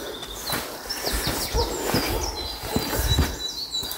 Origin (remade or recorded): recorded